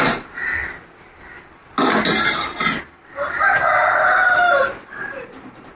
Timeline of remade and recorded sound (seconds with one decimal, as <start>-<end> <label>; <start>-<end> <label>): 0.0-0.6 remade; 0.6-2.9 recorded; 2.9-5.8 remade

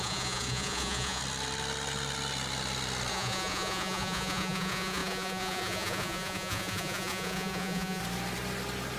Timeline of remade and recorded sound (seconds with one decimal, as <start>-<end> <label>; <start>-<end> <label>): 0.0-1.2 remade; 1.2-3.1 recorded; 3.1-8.0 remade; 8.0-9.0 recorded

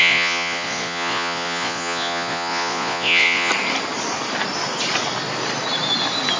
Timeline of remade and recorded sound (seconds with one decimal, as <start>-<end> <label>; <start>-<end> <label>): 0.0-3.5 remade; 3.5-6.4 recorded

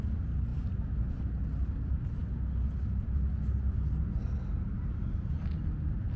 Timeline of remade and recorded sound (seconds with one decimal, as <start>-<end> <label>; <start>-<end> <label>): 0.0-6.2 recorded

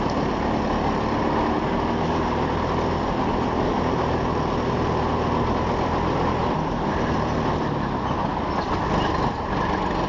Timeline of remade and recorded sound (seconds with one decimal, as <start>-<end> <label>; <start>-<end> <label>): 0.0-10.1 recorded